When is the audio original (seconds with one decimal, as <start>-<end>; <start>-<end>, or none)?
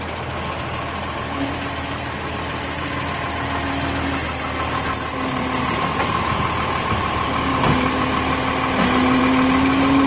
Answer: 0.0-10.1